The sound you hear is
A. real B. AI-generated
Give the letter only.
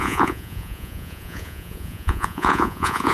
B